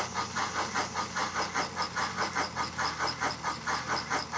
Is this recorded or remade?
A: recorded